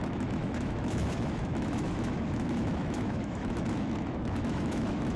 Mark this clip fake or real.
fake